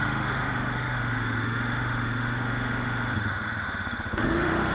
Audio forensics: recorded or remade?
remade